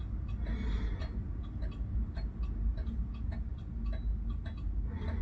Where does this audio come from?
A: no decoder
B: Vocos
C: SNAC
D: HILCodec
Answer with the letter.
A